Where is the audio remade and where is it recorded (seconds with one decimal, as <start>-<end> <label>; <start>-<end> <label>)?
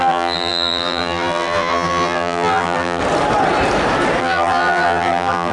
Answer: 0.0-3.0 remade; 3.0-4.2 recorded; 4.2-5.5 remade